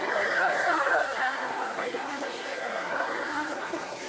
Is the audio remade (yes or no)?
yes